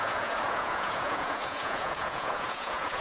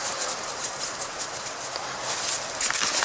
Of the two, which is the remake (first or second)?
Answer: first